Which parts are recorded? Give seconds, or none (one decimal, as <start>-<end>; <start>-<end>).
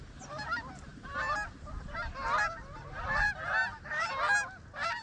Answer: 0.0-5.0